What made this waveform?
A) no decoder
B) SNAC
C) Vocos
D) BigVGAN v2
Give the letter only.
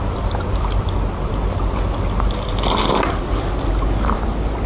A